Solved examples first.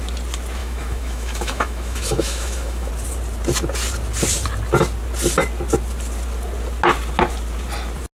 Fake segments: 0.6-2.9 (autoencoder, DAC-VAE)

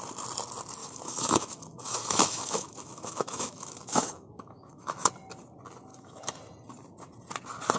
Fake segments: 0.8-5.1 (autoencoder, DAC-VAE); 5.9-6.4

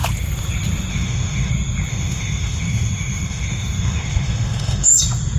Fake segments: 0.9-1.5 (autoencoder, DAC-VAE); 1.9-5.0